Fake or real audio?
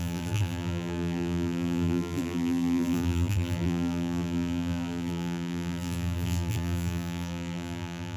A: fake